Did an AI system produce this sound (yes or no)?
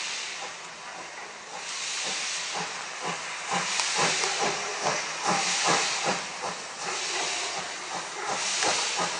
no